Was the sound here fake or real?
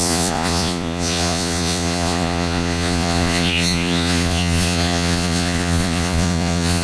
fake